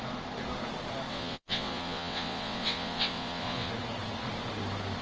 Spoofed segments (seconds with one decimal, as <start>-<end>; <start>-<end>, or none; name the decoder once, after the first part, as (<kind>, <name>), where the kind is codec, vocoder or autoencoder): 1.1-3.7 (vocoder, WaveNeXt)